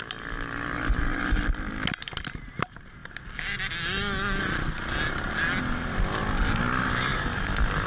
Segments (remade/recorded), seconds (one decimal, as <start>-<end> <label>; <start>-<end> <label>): 0.0-7.9 recorded